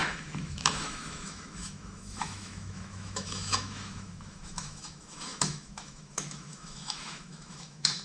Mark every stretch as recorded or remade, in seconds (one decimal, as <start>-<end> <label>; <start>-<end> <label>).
0.0-8.0 remade